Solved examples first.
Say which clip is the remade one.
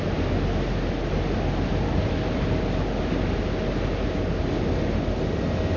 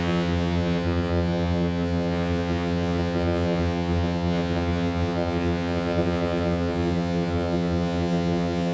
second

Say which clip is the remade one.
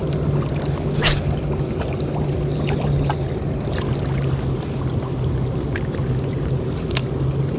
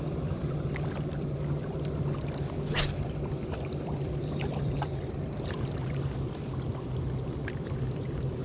second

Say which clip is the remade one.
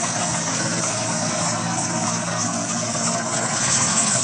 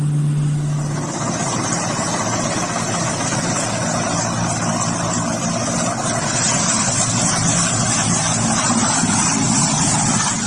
first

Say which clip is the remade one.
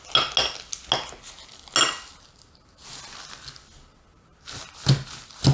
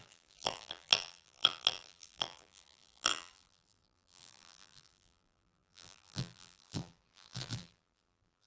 second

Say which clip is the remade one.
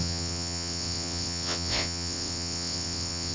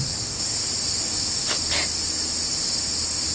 first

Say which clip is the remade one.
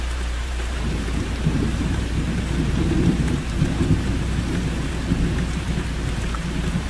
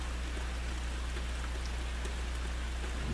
first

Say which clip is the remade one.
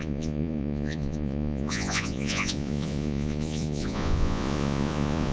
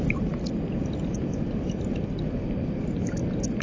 first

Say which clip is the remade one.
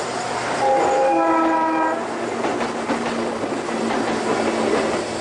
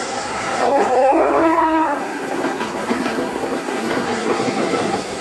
second